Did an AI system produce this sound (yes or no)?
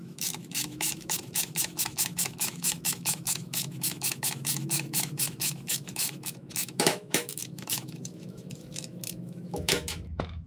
yes